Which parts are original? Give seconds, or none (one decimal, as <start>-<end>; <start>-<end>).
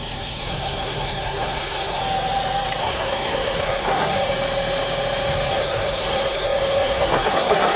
2.0-2.8; 4.3-5.5